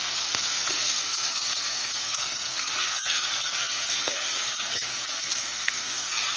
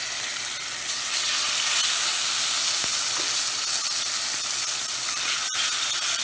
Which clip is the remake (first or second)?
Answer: first